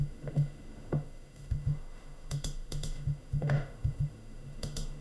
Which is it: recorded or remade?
remade